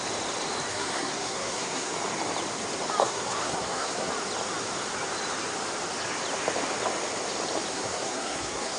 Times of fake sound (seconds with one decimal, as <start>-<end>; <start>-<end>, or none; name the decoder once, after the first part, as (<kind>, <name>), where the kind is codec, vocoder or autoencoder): 0.7-1.9 (codec, SNAC); 3.0-4.1; 7.7-8.8